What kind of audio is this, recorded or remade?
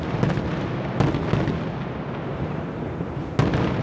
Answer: recorded